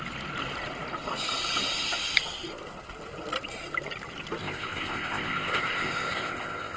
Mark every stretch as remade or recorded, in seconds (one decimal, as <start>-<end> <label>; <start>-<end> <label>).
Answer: 0.0-4.4 recorded; 4.4-6.8 remade